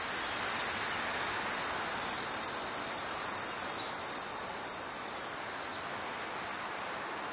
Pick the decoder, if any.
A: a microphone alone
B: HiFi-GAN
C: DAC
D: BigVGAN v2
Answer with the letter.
A